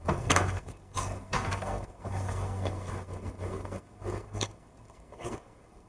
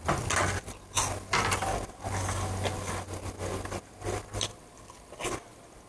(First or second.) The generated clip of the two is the first